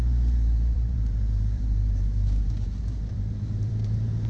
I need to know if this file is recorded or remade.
remade